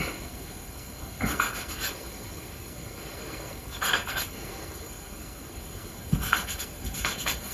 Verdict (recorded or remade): remade